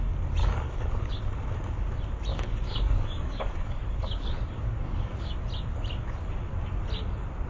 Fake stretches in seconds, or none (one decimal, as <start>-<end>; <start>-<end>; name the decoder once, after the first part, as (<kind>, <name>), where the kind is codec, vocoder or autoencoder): 0.4-1.1 (codec, DAC); 2.3-5.3